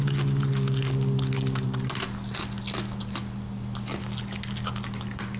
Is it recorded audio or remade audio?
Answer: recorded